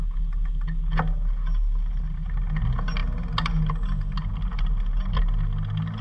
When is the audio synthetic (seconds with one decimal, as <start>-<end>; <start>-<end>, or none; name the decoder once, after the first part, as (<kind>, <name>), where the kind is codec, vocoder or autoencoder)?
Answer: none